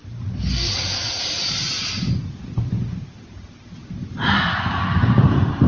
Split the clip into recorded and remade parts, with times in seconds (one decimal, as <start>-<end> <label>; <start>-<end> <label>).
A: 0.0-5.7 recorded